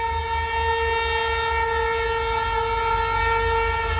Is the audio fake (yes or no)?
no